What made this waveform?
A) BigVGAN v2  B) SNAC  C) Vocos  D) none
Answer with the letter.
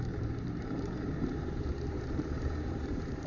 A